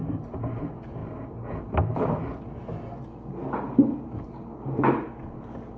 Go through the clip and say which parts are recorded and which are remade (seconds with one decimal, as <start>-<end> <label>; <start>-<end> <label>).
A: 0.0-5.8 recorded